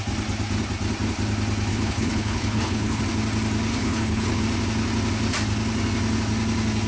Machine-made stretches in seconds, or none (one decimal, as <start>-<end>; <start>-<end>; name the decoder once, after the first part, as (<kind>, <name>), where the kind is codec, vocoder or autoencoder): 1.7-3.0 (codec, HILCodec); 3.7-4.4

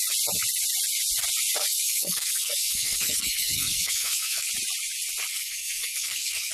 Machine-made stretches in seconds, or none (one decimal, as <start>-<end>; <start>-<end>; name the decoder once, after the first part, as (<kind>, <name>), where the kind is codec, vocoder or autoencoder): 1.6-4.5 (codec, SNAC); 5.3-6.5

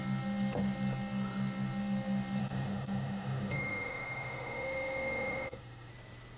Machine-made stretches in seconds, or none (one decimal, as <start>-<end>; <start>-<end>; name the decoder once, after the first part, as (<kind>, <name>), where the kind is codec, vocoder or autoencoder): 2.4-5.9 (autoencoder, DAC-VAE)

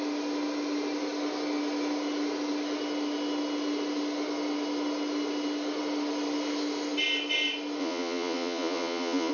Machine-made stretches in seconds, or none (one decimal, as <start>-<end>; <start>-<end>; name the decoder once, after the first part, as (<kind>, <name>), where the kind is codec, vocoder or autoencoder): 7.8-9.3 (vocoder, Vocos)

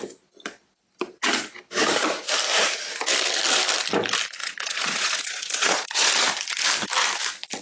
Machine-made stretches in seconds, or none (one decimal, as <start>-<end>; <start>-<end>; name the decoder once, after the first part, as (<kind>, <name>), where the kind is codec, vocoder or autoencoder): 4.4-6.1 (vocoder, Vocos)

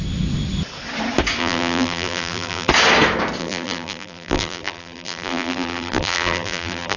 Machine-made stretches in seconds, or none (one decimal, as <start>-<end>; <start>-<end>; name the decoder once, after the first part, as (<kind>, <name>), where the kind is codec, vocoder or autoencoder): 1.4-2.7 (vocoder, BigVGAN v2); 3.4-7.0

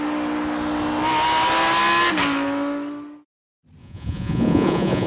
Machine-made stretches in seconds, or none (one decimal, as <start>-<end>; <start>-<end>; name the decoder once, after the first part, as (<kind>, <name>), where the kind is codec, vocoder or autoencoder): 3.8-5.1 (vocoder, Vocos)

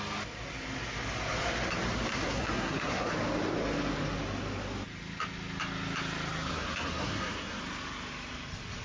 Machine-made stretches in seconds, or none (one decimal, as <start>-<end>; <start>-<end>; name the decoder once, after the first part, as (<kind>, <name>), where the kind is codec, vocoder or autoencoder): 2.1-3.1 (codec, SNAC); 6.5-7.6